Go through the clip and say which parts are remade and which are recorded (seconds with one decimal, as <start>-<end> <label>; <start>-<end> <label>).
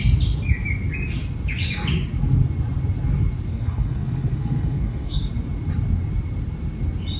0.0-3.5 recorded; 3.5-5.2 remade; 5.2-7.2 recorded